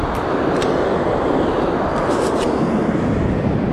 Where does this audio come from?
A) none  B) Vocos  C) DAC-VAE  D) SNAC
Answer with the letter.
A